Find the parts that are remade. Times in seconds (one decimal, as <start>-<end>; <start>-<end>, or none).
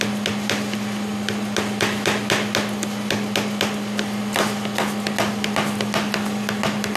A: none